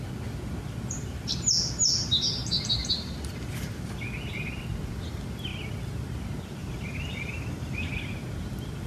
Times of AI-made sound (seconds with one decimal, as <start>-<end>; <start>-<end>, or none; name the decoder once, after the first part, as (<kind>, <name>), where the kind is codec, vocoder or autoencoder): 2.8-4.0 (vocoder, BigVGAN v2); 6.6-7.9